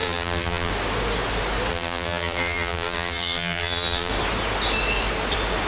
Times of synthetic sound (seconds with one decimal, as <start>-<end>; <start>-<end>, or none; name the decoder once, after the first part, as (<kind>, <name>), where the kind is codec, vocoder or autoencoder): 0.0-0.7 (vocoder, BigVGAN v2); 1.7-4.1